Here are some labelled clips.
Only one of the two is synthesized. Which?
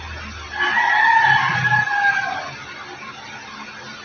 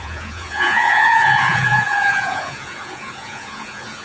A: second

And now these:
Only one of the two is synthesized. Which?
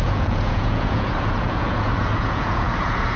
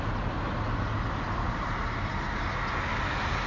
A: first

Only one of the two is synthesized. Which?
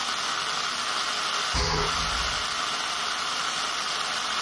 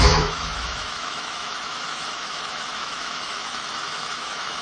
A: second